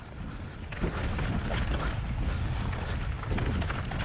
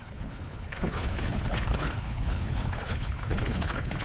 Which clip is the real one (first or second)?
first